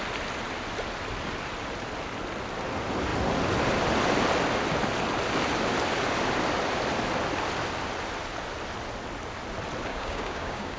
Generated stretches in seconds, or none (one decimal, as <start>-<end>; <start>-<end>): 9.9-10.8